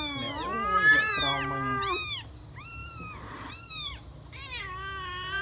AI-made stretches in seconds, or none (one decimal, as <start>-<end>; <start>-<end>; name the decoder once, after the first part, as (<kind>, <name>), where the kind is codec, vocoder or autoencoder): none